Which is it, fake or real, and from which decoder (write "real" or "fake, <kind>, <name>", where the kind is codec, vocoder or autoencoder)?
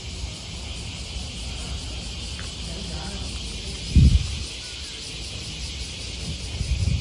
real